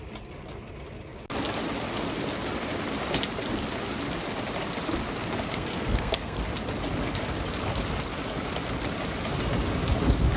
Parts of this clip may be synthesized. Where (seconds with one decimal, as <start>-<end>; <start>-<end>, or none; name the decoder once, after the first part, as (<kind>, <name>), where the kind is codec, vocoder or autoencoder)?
5.5-6.4 (codec, SNAC)